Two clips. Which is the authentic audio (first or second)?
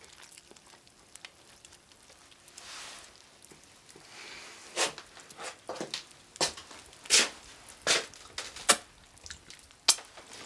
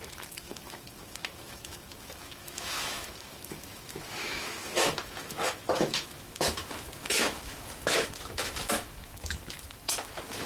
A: first